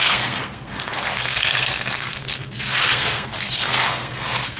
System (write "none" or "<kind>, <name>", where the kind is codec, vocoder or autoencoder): codec, SNAC